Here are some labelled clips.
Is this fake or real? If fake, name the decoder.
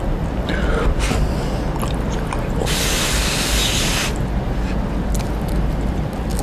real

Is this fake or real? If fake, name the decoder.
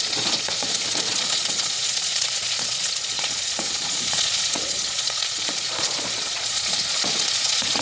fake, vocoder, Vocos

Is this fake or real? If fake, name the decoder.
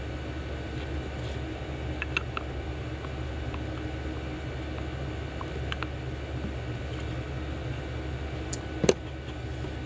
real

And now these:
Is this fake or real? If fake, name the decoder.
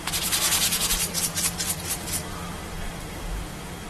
real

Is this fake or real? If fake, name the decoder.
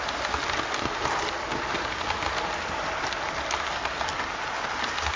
real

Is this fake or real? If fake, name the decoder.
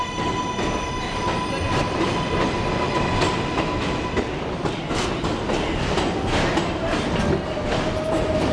real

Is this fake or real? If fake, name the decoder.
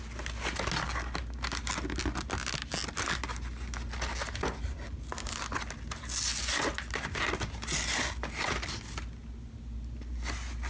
real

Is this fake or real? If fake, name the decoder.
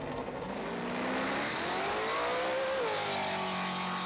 real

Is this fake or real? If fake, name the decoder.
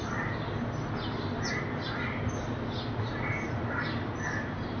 real